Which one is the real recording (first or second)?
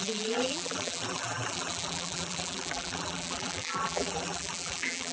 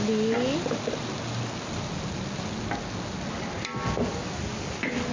second